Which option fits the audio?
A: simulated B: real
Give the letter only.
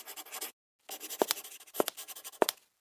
B